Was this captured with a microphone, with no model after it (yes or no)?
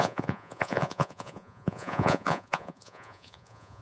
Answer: no